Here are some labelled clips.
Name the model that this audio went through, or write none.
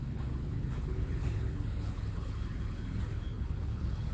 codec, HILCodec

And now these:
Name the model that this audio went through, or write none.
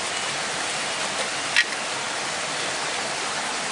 none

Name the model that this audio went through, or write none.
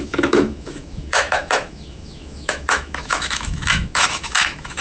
autoencoder, DAC-VAE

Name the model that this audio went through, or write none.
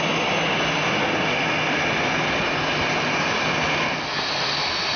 none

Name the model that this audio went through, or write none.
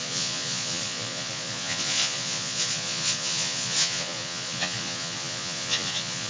vocoder, Vocos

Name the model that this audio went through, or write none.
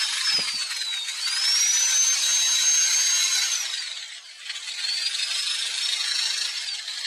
none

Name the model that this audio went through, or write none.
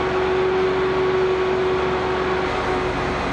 none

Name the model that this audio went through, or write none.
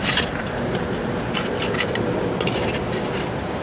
none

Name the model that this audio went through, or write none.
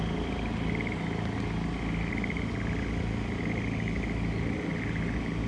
none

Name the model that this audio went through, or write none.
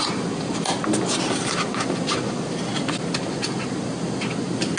none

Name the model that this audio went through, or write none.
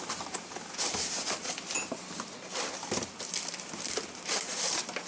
none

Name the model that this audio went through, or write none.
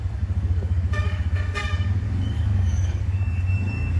codec, DAC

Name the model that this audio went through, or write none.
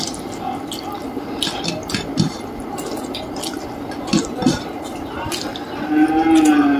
none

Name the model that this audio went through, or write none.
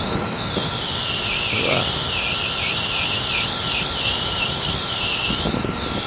none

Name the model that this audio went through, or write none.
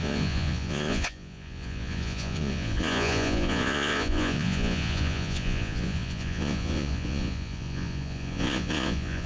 vocoder, Vocos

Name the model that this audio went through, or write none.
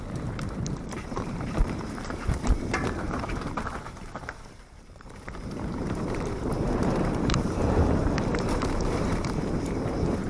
vocoder, BigVGAN v2